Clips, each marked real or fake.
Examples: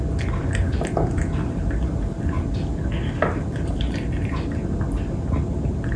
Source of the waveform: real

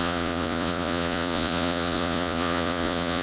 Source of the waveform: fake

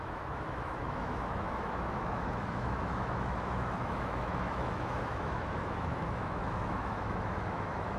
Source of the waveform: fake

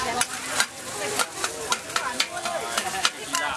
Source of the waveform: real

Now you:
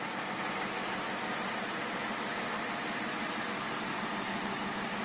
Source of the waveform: real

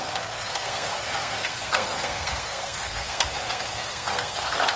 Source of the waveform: fake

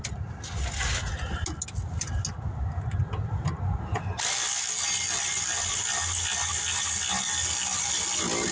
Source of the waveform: real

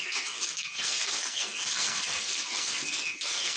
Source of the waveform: fake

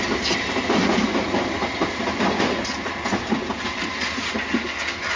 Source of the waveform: real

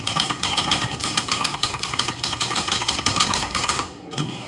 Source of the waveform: fake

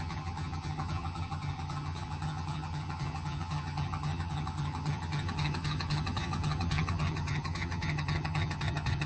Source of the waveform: fake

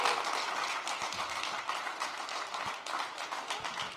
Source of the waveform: real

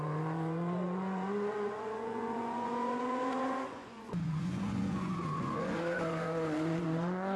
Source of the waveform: fake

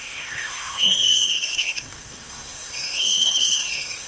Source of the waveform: fake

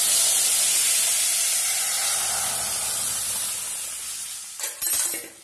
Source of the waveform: real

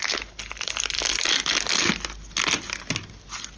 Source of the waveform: real